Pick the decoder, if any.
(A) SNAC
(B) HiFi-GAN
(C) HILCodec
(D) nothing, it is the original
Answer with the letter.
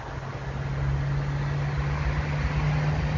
D